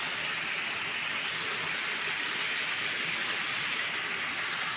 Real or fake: real